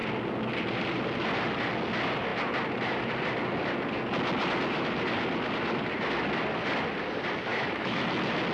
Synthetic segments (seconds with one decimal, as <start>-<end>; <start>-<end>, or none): 7.5-8.0